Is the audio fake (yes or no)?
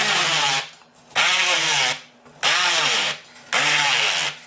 no